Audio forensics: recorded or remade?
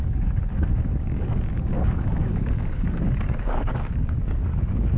remade